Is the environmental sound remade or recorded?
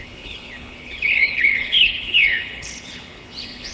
remade